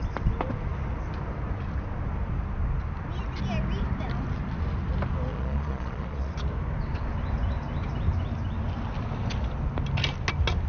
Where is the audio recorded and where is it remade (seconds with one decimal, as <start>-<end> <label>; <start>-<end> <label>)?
0.0-5.3 recorded; 5.3-6.3 remade; 6.3-10.7 recorded